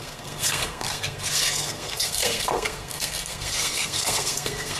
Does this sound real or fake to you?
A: fake